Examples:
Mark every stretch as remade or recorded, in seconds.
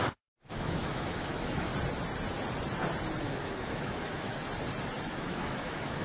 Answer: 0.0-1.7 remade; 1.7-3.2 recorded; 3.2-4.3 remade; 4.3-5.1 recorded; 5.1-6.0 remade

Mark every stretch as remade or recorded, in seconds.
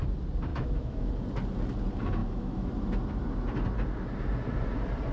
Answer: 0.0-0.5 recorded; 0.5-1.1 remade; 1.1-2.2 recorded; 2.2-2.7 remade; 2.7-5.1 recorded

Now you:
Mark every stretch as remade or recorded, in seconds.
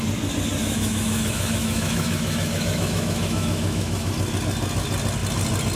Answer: 0.0-0.6 recorded; 0.6-4.1 remade; 4.1-5.8 recorded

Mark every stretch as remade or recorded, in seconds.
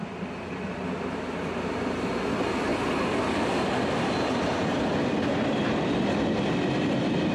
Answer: 0.0-7.3 recorded